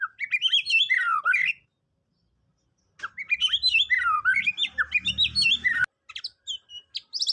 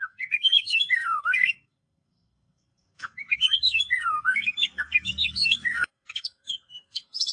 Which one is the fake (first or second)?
second